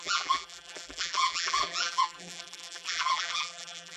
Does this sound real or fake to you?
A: fake